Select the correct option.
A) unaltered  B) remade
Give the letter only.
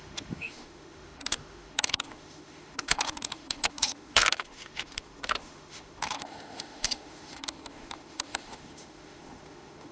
B